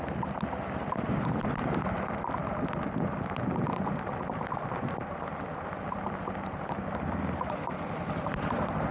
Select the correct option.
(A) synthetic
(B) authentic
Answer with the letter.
B